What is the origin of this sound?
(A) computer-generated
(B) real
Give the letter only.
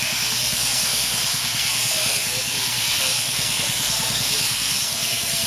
A